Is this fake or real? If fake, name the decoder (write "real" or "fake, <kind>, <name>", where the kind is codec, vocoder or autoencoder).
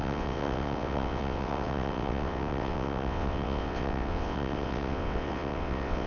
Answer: fake, vocoder, WaveNeXt